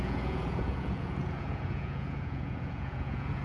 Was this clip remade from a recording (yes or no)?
yes